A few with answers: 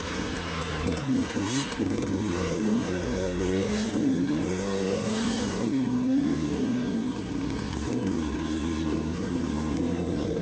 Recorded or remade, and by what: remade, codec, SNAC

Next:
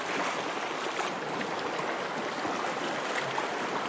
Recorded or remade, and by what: recorded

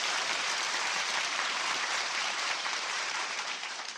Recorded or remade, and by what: remade, vocoder, BigVGAN v2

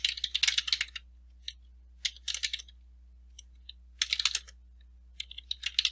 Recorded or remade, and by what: recorded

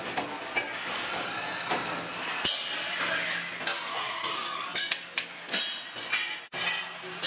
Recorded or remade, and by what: recorded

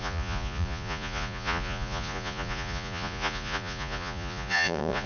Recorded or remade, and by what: remade, vocoder, Vocos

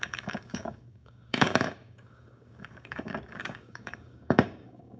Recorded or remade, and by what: remade, codec, DAC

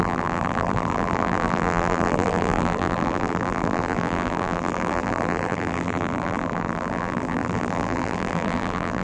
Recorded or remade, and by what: remade, vocoder, BigVGAN v2